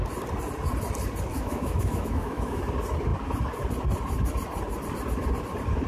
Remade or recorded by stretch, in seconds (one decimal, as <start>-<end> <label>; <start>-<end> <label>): 0.0-1.3 recorded; 1.3-2.6 remade; 2.6-5.9 recorded